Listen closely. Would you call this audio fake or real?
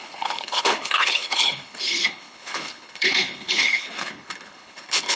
fake